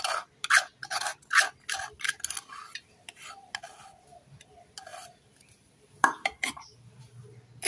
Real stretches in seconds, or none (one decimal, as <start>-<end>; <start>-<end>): 0.0-4.9; 7.0-7.7